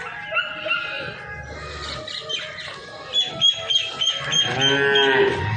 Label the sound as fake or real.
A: real